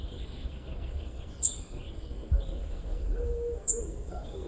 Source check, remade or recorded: remade